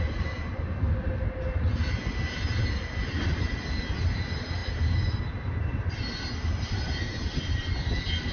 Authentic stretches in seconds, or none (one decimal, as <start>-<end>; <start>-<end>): 0.0-8.3